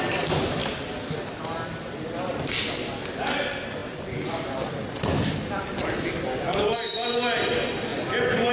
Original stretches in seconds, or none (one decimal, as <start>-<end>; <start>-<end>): 0.0-8.5